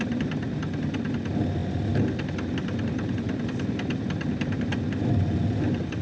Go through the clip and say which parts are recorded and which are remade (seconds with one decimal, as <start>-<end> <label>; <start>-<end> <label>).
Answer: 0.0-6.0 recorded